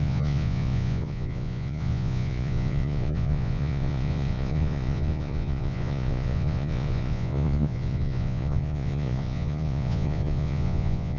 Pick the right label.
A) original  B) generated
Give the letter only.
B